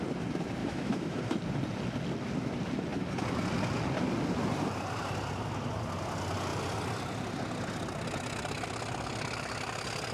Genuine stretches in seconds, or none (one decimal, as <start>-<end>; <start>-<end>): 0.0-0.6; 1.2-10.1